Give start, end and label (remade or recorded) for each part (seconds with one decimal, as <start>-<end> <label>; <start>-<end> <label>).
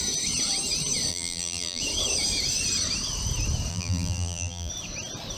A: 0.0-1.1 recorded; 1.1-1.8 remade; 1.8-3.7 recorded; 3.7-4.7 remade; 4.7-5.4 recorded